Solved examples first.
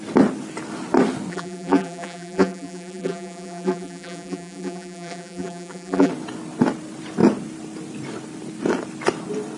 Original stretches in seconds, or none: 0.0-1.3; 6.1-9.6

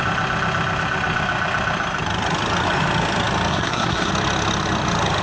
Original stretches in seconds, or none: 0.0-3.5; 4.1-5.2

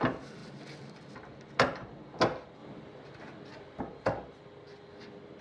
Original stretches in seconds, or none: 0.0-5.4

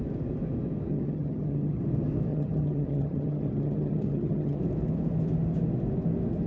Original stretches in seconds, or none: 0.0-0.9; 1.8-2.3; 4.6-6.5